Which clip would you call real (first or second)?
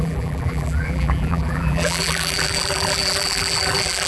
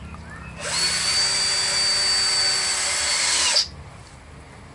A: second